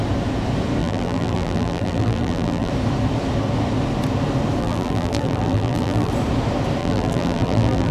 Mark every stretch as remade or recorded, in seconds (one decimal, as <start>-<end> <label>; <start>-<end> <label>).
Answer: 0.0-0.8 recorded; 0.8-2.7 remade; 2.7-4.6 recorded; 4.6-6.1 remade; 6.1-6.8 recorded; 6.8-7.9 remade

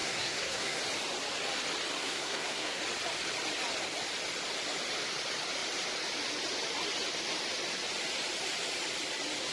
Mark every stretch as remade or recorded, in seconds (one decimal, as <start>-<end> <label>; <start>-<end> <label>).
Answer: 0.0-0.8 remade; 0.8-2.0 recorded; 2.0-2.8 remade; 2.8-9.5 recorded

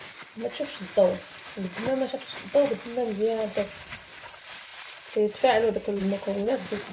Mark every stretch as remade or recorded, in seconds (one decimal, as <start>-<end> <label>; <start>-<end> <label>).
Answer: 0.0-6.9 recorded